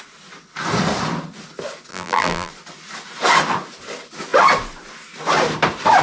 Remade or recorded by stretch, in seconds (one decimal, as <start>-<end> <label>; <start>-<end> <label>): 0.0-1.9 recorded; 1.9-2.5 remade; 2.5-6.0 recorded